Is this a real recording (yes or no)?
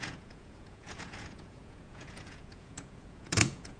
no